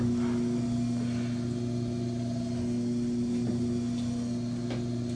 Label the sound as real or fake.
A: real